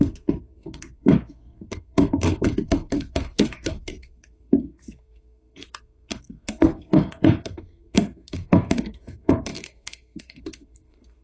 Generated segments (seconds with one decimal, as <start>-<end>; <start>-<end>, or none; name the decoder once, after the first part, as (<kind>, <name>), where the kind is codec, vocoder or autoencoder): 0.0-11.2 (codec, SNAC)